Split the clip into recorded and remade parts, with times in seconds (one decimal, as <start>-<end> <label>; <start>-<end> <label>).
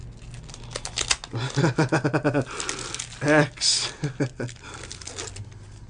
0.0-5.9 recorded